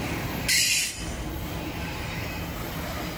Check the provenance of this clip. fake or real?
real